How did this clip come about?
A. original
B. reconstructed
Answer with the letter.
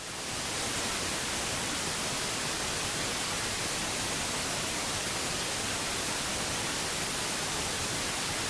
A